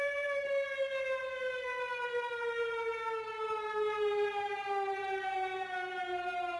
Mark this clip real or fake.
real